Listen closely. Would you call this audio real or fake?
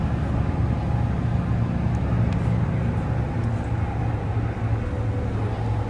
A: real